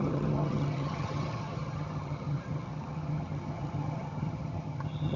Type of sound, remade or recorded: remade